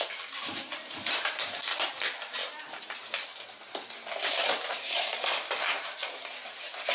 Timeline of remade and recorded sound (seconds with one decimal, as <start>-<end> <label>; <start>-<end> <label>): 0.0-2.4 remade; 2.4-4.7 recorded; 4.7-6.9 remade